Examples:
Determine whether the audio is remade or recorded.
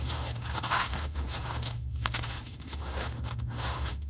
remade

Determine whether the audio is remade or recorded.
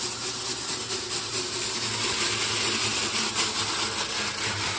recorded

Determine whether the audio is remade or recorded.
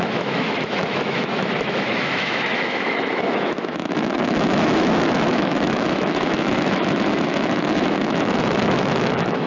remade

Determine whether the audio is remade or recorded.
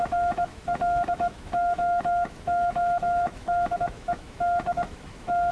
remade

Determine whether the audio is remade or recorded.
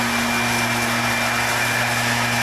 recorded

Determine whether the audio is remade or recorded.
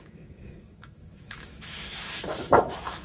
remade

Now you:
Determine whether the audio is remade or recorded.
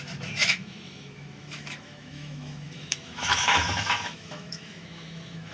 remade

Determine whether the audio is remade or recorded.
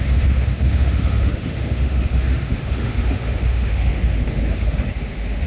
remade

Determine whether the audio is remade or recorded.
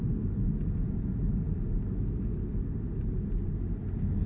recorded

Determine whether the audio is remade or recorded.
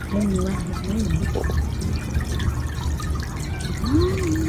recorded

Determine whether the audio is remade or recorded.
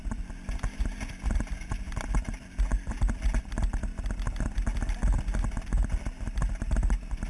recorded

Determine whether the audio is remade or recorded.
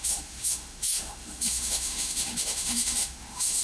remade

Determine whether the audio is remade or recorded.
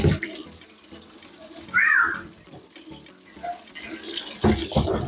recorded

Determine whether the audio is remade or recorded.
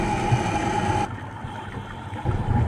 recorded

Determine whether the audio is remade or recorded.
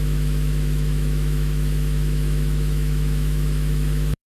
remade